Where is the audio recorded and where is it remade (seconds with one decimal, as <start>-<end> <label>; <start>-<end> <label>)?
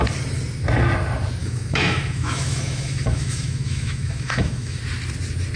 0.0-1.4 recorded; 1.4-4.8 remade; 4.8-5.6 recorded